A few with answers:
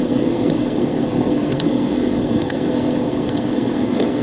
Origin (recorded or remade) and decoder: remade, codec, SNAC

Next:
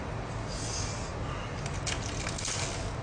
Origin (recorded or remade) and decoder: recorded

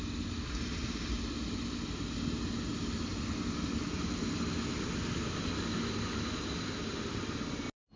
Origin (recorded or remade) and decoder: recorded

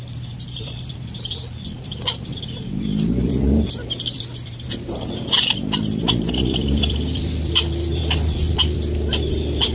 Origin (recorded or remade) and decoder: remade, vocoder, BigVGAN v2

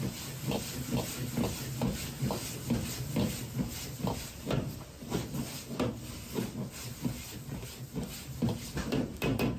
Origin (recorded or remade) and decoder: recorded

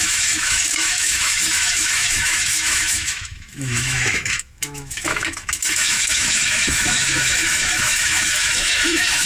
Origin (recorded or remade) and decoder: remade, autoencoder, DAC-VAE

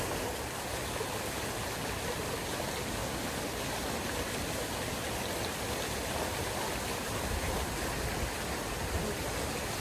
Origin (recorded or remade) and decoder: recorded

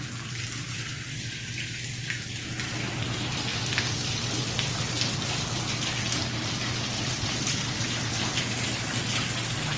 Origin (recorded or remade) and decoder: recorded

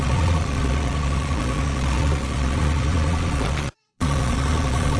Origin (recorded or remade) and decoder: remade, vocoder, Vocos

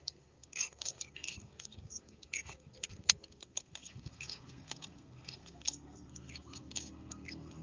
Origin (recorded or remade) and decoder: remade, codec, SNAC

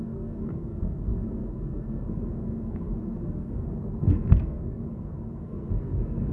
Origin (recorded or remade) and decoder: remade, codec, SNAC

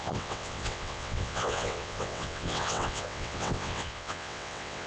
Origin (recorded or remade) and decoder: remade, vocoder, WaveNeXt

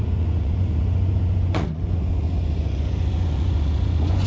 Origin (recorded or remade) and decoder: remade, vocoder, Vocos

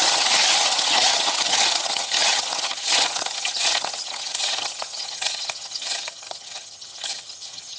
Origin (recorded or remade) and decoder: remade, vocoder, HiFi-GAN